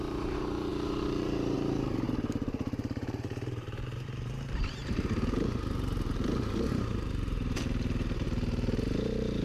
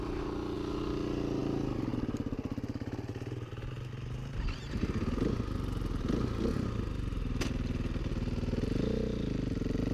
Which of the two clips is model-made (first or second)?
first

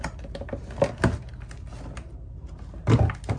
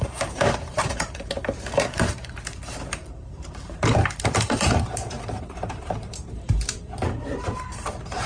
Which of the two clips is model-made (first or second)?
second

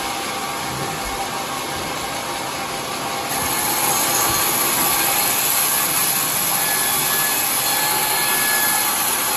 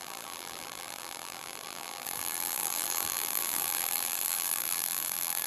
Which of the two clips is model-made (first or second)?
second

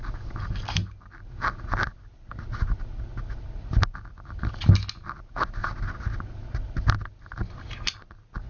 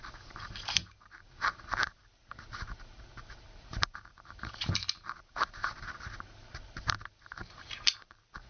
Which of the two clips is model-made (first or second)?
second